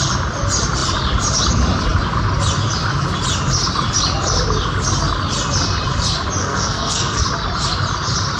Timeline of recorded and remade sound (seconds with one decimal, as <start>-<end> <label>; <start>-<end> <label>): 0.0-6.4 recorded; 6.4-7.2 remade; 7.2-8.4 recorded